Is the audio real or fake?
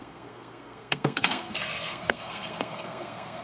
fake